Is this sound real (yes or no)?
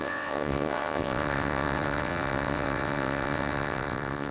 no